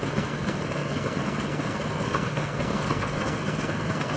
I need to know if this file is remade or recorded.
remade